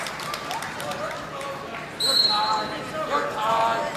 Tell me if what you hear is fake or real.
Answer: real